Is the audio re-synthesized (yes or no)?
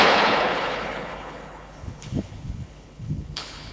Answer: yes